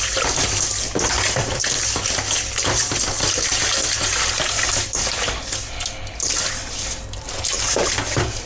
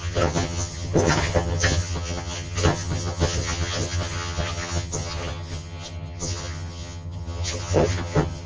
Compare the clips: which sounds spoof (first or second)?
second